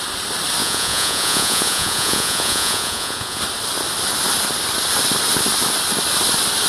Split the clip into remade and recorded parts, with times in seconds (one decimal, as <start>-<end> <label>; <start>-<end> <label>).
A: 0.0-0.6 recorded; 0.6-3.4 remade; 3.4-6.7 recorded